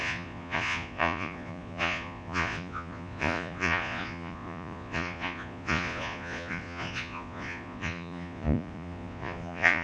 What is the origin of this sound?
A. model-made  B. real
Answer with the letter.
A